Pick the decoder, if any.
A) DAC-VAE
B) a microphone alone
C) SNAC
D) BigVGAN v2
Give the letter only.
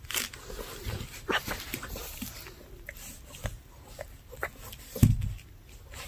B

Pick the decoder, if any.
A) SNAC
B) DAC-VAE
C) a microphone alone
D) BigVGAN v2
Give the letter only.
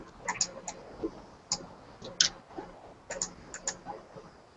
C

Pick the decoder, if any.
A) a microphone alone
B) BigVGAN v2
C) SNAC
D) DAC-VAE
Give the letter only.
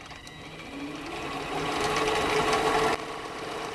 A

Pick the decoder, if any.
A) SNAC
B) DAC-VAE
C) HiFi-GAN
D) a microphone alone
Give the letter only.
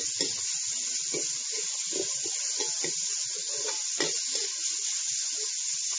D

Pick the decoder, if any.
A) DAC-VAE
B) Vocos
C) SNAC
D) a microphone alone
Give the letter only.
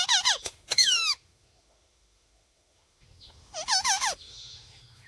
A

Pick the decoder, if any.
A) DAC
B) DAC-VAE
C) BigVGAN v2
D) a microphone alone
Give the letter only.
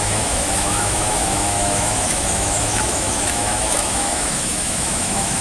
B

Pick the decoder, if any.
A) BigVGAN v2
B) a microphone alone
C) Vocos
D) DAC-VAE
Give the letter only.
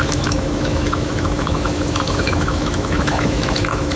D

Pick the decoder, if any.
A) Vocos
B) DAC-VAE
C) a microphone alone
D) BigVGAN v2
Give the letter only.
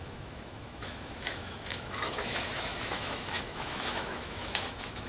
B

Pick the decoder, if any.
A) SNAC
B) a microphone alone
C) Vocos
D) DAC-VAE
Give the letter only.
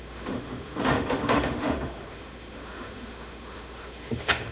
D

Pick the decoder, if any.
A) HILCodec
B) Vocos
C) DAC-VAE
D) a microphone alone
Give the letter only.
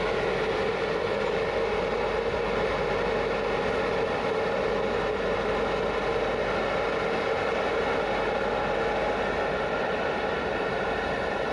D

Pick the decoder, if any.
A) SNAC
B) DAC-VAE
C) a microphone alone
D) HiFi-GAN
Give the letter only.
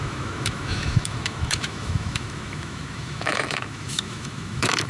B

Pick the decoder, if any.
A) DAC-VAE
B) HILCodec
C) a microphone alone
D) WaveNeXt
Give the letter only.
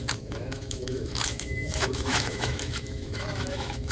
A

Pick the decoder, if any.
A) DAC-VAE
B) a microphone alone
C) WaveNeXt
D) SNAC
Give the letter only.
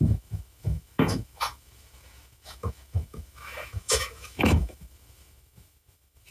A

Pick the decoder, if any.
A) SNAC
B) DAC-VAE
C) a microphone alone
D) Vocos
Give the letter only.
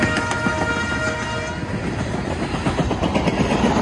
C